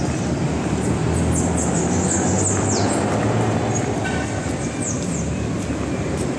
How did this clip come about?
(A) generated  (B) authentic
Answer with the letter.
B